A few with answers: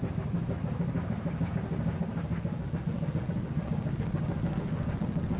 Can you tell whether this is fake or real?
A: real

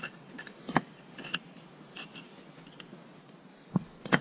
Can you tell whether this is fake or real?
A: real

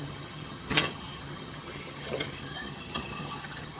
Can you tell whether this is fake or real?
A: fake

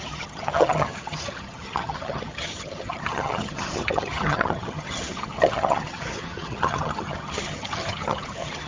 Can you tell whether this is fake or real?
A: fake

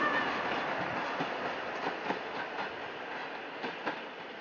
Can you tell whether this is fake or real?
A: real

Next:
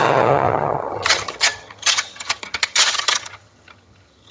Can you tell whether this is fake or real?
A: fake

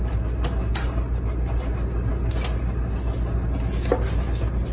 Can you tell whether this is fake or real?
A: real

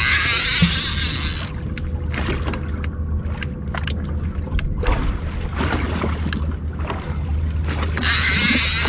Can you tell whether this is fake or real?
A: real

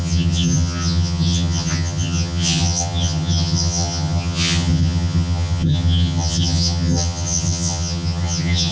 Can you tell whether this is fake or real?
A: fake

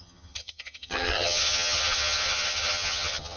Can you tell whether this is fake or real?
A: fake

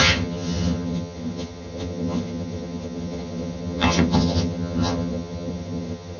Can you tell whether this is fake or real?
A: fake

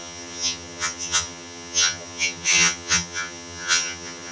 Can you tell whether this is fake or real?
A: fake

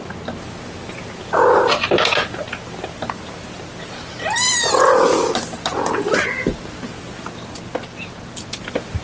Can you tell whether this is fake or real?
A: real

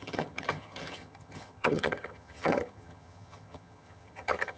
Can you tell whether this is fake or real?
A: fake